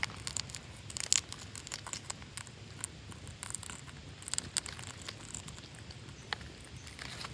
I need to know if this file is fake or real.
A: real